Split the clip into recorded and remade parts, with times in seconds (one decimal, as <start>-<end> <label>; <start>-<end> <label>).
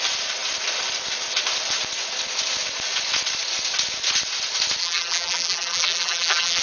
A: 0.0-4.8 recorded; 4.8-6.6 remade